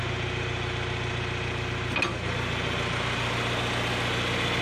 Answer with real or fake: real